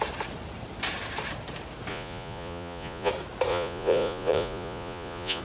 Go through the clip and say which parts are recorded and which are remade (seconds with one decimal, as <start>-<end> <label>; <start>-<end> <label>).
0.0-1.9 recorded; 1.9-3.1 remade; 3.1-3.5 recorded; 3.5-5.4 remade